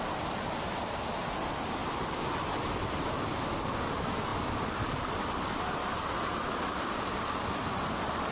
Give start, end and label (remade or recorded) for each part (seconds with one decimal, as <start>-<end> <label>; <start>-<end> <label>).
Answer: 0.0-1.8 recorded; 1.8-2.4 remade; 2.4-4.3 recorded; 4.3-5.7 remade; 5.7-8.3 recorded